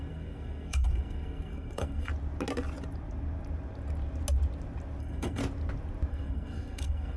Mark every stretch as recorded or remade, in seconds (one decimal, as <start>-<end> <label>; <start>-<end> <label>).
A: 0.0-2.1 remade; 2.1-5.0 recorded; 5.0-5.4 remade; 5.4-6.1 recorded; 6.1-7.2 remade